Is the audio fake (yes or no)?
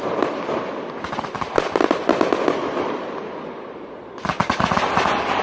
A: no